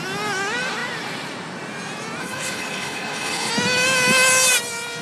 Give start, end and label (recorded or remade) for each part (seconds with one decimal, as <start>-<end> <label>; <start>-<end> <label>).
0.0-2.2 recorded; 2.2-3.5 remade; 3.5-5.0 recorded